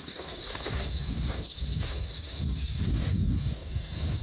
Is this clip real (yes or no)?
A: no